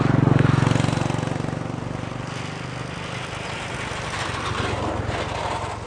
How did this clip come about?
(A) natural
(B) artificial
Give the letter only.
A